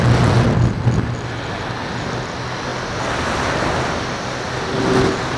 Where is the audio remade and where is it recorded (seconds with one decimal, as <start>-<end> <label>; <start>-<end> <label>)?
0.0-2.7 recorded; 2.7-3.9 remade; 3.9-5.4 recorded